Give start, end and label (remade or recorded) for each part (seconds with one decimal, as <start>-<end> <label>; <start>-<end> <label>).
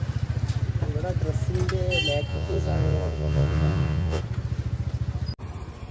0.0-2.3 recorded; 2.3-4.2 remade; 4.2-5.9 recorded